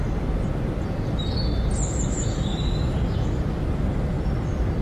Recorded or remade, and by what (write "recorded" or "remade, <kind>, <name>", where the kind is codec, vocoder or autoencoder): recorded